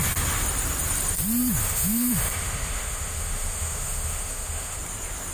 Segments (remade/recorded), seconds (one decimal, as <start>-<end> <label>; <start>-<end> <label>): 0.0-1.6 recorded; 1.6-4.8 remade; 4.8-5.3 recorded